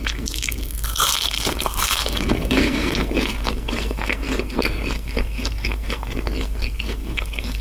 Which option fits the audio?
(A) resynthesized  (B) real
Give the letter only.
A